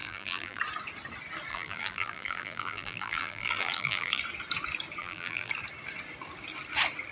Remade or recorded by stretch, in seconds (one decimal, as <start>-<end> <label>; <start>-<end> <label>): 0.0-0.6 remade; 0.6-1.5 recorded; 1.5-4.2 remade; 4.2-5.0 recorded; 5.0-5.5 remade; 5.5-7.1 recorded